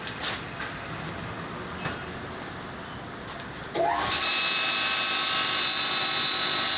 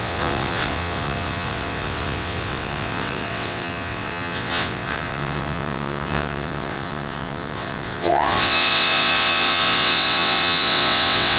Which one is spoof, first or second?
second